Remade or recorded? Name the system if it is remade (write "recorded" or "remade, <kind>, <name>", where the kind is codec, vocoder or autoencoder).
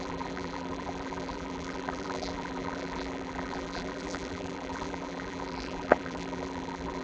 remade, vocoder, BigVGAN v2